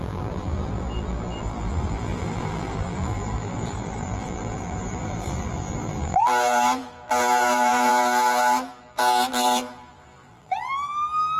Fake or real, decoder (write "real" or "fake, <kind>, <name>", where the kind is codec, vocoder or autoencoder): fake, vocoder, BigVGAN v2